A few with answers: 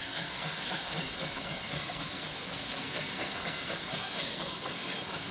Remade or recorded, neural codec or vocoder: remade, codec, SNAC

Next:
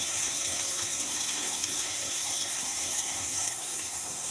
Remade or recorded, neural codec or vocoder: remade, codec, SNAC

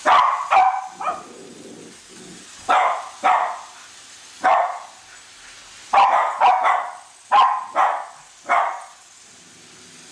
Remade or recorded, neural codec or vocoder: recorded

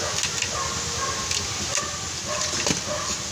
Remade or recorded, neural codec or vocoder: recorded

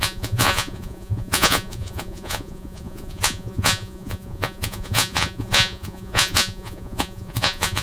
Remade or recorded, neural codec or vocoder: remade, vocoder, Vocos